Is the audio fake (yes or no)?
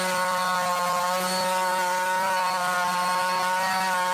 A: no